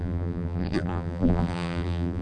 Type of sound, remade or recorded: remade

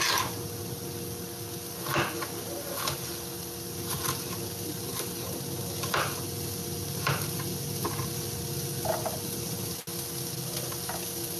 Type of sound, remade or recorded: recorded